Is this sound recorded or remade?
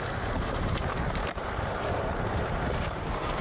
remade